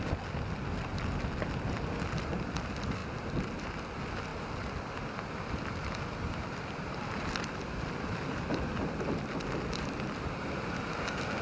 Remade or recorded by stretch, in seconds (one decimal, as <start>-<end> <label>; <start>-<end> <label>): 0.0-3.0 recorded; 3.0-3.5 remade; 3.5-4.3 recorded; 4.3-9.3 remade; 9.3-11.4 recorded